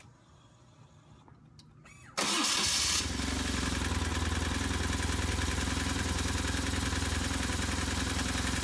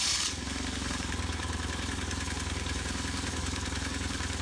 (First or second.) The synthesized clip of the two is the second